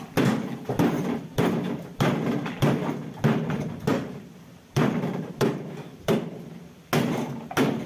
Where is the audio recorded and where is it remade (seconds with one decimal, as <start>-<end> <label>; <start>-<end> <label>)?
0.0-3.9 recorded; 3.9-6.4 remade; 6.4-7.9 recorded